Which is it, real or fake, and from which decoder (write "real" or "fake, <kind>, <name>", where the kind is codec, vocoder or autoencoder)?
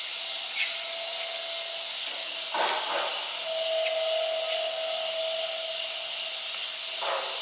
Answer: real